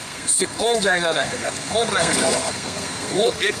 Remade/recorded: remade